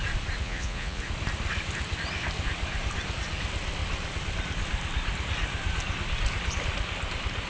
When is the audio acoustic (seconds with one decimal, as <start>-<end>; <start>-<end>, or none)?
0.0-0.4; 1.0-7.5